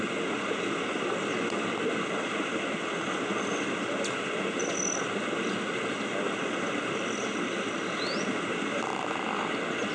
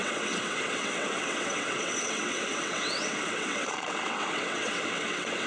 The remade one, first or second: second